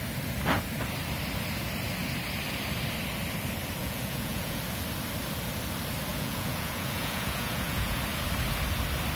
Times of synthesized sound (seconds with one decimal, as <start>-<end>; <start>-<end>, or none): 3.8-4.6; 6.1-8.0